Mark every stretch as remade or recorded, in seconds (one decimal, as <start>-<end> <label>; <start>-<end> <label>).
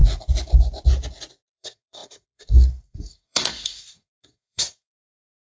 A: 0.0-1.5 recorded; 1.5-5.4 remade